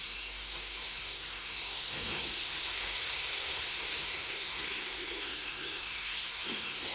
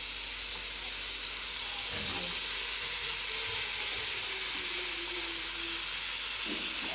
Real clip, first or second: second